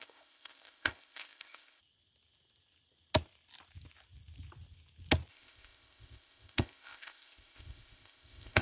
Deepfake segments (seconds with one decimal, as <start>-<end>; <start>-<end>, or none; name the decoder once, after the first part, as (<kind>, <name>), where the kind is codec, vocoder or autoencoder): 0.0-1.8 (codec, ZipCodec); 5.3-8.6